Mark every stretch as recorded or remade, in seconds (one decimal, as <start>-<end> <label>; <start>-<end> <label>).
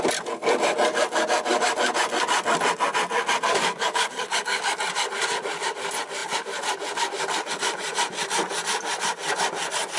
0.0-3.5 recorded; 3.5-4.8 remade; 4.8-10.0 recorded